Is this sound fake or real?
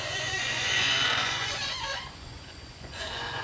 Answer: fake